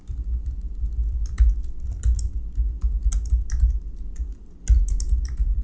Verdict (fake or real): real